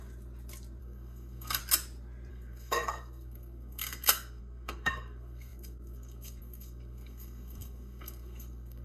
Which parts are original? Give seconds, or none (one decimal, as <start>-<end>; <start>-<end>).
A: 0.0-0.8; 1.6-2.3